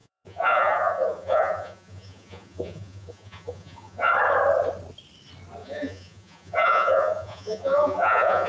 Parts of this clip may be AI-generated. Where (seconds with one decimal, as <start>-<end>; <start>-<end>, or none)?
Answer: 0.0-4.1; 5.6-8.5